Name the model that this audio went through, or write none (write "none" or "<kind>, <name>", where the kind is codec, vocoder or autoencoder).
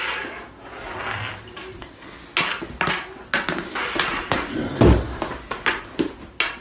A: none